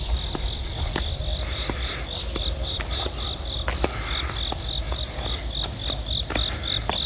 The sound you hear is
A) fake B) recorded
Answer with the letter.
B